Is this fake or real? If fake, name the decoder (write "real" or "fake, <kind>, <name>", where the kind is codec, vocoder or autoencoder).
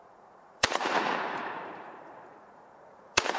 fake, vocoder, Vocos